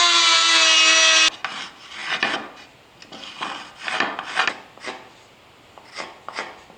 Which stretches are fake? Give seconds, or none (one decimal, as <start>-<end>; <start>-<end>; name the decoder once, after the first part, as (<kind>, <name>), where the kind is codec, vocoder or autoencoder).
none